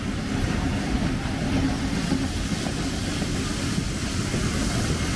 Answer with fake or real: real